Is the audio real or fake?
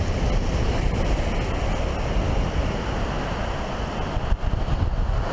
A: real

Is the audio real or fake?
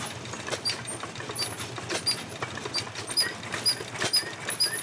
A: real